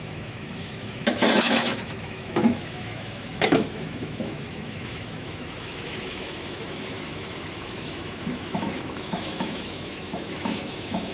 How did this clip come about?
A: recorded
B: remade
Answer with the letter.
B